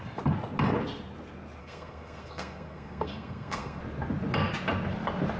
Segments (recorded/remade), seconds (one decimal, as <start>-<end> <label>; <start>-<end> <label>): 0.0-1.6 recorded; 1.6-3.8 remade; 3.8-5.4 recorded